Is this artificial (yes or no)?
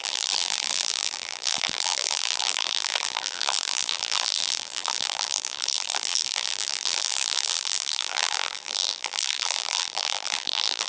yes